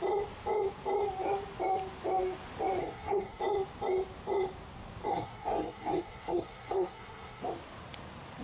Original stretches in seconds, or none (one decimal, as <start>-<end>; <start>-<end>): 0.0-2.8; 3.4-5.1; 7.4-8.4